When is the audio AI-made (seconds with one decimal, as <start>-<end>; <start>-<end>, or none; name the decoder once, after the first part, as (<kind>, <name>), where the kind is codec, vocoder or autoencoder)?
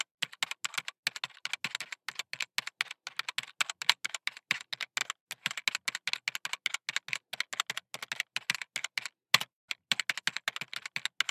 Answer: none